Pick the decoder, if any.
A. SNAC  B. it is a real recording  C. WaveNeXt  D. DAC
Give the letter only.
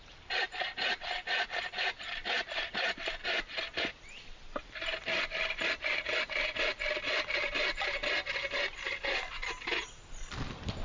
B